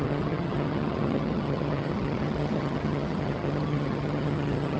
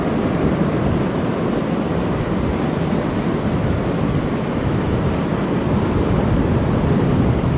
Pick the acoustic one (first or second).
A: second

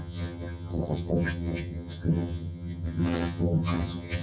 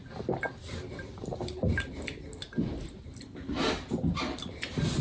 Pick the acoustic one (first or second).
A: second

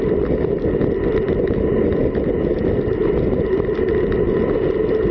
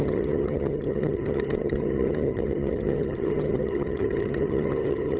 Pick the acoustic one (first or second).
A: first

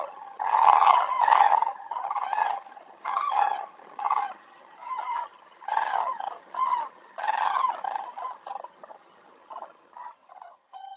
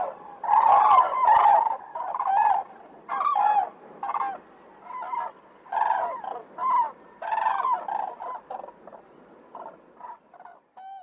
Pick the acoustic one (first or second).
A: second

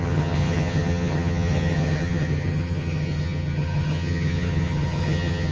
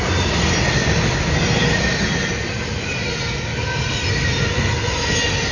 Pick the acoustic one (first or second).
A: second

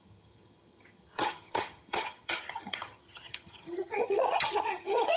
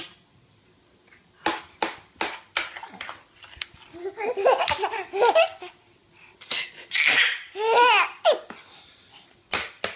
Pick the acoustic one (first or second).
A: second